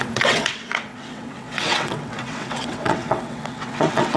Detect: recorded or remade remade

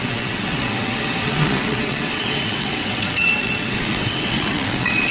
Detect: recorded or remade remade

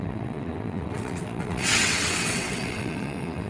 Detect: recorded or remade remade